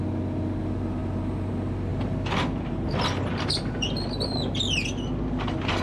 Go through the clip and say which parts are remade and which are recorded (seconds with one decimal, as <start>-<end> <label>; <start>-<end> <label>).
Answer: 0.0-5.8 recorded